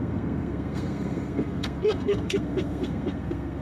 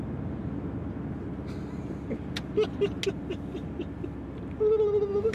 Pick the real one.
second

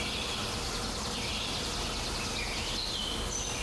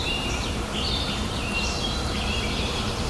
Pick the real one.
first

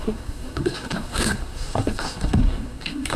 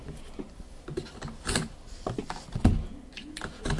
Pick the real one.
second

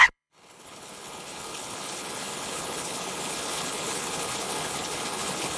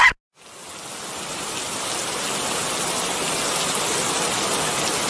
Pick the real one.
second